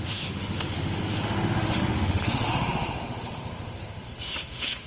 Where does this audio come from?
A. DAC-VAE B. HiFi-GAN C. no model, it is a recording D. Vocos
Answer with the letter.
A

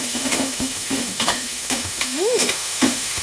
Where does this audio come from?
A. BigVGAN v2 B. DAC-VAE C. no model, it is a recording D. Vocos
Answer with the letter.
B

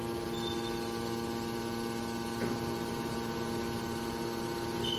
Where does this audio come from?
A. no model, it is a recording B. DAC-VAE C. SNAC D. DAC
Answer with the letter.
A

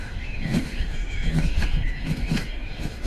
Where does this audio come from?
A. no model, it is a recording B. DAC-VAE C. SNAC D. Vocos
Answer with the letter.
B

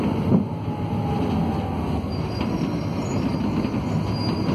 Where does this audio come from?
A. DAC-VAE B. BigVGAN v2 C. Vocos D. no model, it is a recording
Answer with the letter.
D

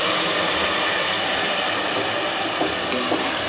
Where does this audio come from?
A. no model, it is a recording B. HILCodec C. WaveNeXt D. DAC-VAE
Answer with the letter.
A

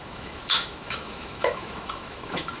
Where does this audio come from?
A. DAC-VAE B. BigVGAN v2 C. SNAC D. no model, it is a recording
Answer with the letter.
A